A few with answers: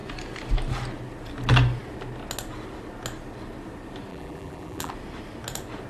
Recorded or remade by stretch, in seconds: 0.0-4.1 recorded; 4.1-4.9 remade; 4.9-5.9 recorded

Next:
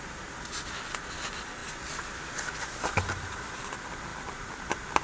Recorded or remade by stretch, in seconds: 0.0-5.0 recorded

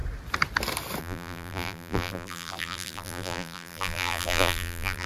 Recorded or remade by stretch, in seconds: 0.0-1.0 recorded; 1.0-5.1 remade

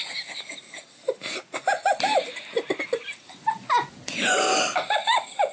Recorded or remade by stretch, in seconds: 0.0-5.5 recorded

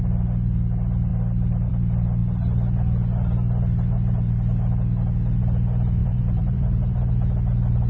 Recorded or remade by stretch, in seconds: 0.0-6.0 recorded; 6.0-7.1 remade; 7.1-7.9 recorded

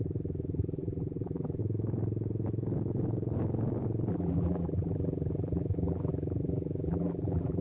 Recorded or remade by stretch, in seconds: 0.0-1.6 remade; 1.6-4.1 recorded; 4.1-7.6 remade

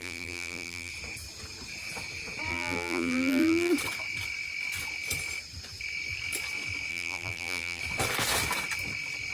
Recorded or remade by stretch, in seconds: 0.0-0.9 remade; 0.9-2.5 recorded; 2.5-3.7 remade; 3.7-6.9 recorded; 6.9-7.8 remade; 7.8-9.3 recorded

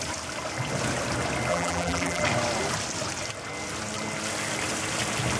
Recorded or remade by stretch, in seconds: 0.0-1.5 recorded; 1.5-2.2 remade; 2.2-5.4 recorded